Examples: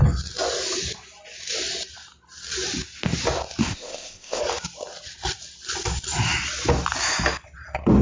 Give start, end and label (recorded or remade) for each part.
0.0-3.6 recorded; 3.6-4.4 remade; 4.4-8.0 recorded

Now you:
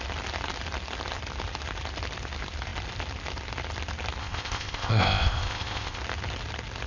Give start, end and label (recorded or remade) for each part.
0.0-4.2 recorded; 4.2-6.0 remade; 6.0-6.9 recorded